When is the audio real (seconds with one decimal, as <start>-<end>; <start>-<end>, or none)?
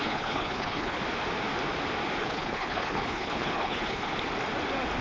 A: 1.0-2.2; 4.1-5.0